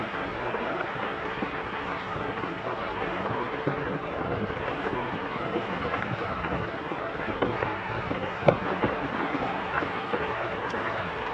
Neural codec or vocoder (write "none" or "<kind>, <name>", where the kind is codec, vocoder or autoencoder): codec, SNAC